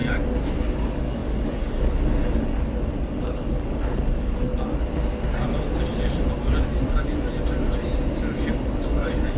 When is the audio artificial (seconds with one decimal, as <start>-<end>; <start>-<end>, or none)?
0.7-4.5; 8.5-9.4